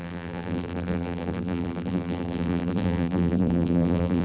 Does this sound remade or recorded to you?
remade